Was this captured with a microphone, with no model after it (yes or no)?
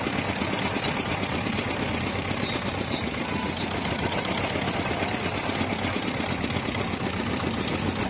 yes